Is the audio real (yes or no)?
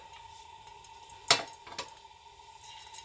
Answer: yes